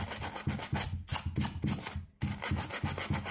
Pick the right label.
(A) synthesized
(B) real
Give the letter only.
B